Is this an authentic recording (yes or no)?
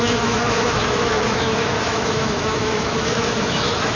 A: no